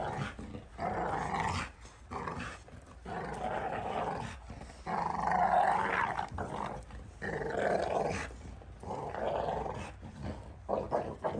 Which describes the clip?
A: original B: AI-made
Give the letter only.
A